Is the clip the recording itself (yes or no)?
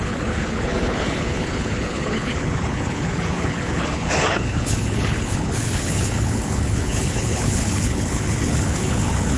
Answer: no